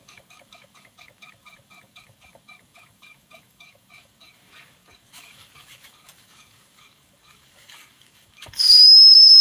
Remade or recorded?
remade